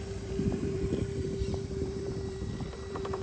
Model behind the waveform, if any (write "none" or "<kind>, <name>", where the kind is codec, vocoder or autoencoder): vocoder, BigVGAN v2